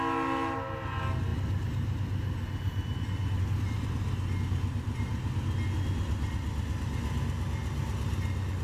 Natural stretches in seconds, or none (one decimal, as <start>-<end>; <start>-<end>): 0.0-8.6